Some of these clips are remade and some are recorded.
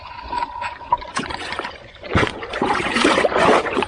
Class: remade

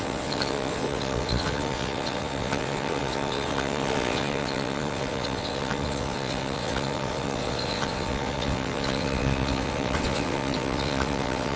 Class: remade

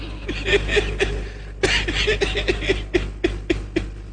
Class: recorded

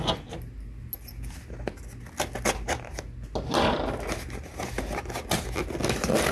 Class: recorded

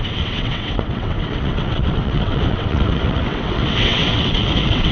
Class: remade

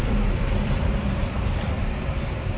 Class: remade